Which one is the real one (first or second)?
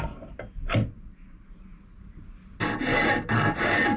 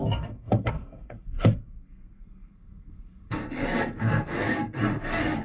first